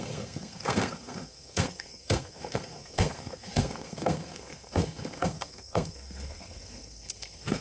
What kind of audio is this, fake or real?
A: fake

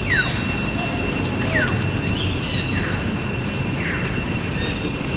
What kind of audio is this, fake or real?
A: real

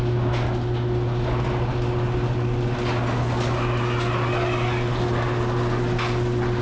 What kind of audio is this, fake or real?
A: real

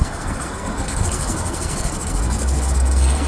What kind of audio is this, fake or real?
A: fake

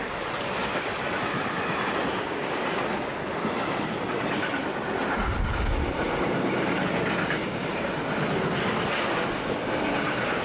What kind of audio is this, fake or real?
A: real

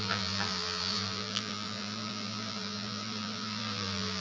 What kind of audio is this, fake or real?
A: fake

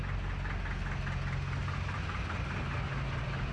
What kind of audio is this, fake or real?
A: real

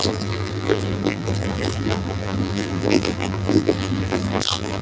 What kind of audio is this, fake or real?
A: fake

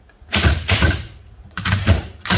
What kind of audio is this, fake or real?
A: fake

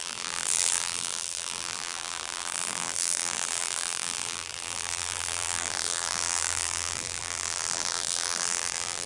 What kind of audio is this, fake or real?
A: fake